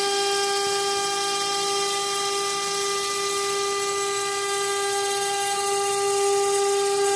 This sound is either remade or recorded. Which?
recorded